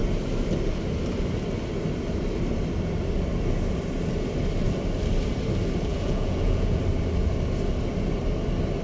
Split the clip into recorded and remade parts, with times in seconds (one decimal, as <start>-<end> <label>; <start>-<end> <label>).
0.0-5.9 recorded; 5.9-6.8 remade; 6.8-8.8 recorded